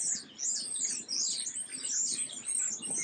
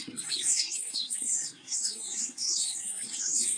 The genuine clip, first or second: first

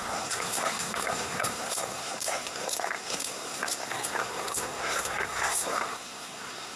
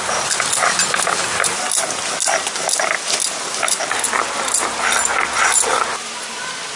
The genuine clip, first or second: second